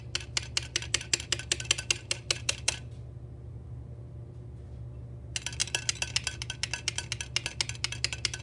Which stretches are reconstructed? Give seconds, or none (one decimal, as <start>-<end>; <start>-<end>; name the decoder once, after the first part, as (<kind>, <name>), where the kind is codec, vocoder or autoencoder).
none